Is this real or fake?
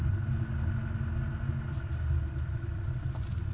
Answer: real